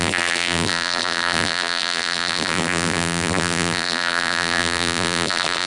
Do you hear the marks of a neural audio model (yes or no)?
yes